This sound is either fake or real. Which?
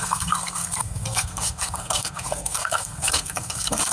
fake